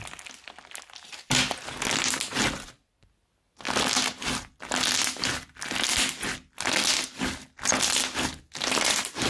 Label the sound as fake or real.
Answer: real